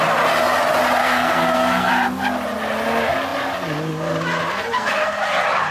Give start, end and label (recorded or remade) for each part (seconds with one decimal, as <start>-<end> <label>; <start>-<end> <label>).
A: 0.0-1.0 recorded; 1.0-1.9 remade; 1.9-4.5 recorded; 4.5-5.2 remade; 5.2-5.7 recorded